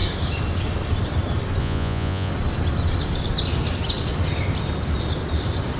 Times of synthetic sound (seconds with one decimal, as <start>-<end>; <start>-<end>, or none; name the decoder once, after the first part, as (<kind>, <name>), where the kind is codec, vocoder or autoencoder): 1.6-2.3 (vocoder, Vocos)